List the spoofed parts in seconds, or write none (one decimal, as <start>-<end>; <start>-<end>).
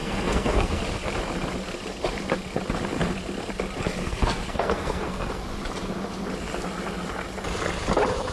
0.0-0.8; 4.0-5.4